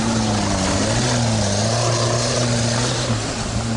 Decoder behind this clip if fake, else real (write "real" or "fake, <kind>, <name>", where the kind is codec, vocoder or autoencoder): real